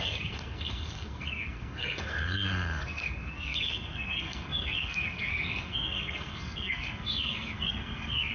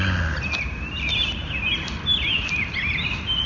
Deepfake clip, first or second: first